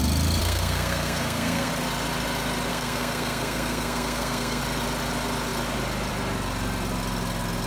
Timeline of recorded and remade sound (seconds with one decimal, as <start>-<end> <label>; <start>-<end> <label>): 0.0-0.4 recorded; 0.4-1.7 remade; 1.7-2.7 recorded; 2.7-4.6 remade; 4.6-7.7 recorded